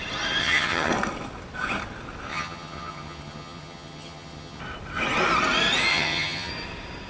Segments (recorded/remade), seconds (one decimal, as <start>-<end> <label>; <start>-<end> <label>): 0.0-0.4 recorded; 0.4-0.9 remade; 0.9-2.3 recorded; 2.3-4.6 remade; 4.6-5.9 recorded; 5.9-6.5 remade; 6.5-7.1 recorded